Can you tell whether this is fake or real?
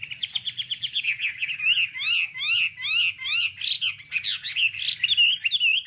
real